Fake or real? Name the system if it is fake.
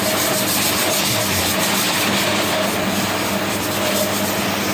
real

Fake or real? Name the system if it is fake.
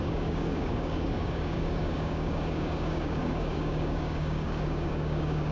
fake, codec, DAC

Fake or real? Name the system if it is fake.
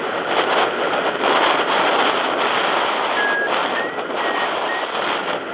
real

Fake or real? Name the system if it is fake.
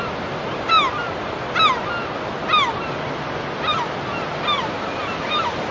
real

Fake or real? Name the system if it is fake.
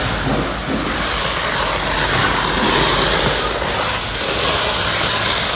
real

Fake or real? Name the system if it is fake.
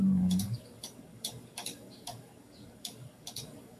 fake, codec, DAC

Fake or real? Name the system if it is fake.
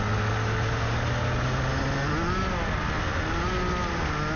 real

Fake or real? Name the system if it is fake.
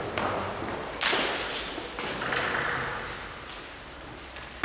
real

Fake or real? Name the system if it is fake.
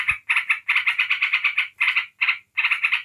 real